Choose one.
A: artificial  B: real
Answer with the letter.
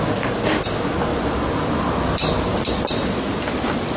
B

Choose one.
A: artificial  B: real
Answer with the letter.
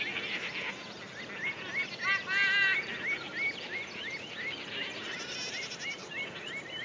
B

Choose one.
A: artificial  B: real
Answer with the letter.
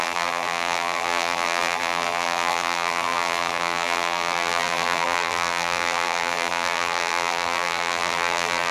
A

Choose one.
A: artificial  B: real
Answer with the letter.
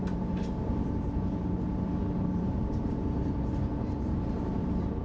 A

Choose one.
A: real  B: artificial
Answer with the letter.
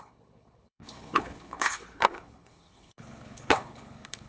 B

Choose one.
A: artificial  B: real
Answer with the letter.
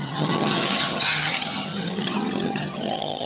A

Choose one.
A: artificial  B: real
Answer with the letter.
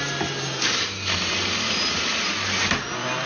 B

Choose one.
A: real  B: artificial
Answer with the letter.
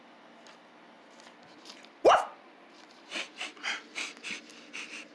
A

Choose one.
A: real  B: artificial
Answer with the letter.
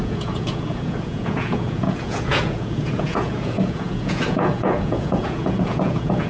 B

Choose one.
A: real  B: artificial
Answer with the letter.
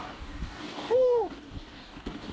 B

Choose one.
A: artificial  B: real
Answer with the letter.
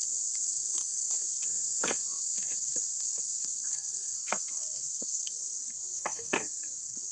A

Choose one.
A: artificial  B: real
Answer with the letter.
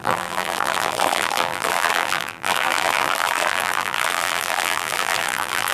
A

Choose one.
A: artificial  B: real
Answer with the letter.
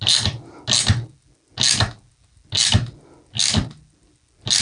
B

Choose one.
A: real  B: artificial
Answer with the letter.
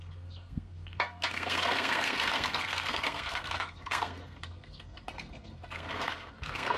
B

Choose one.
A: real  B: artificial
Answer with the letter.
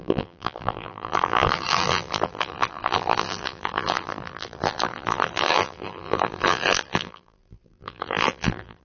B